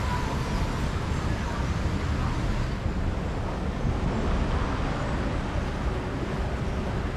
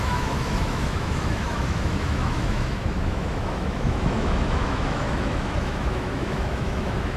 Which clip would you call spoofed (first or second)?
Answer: second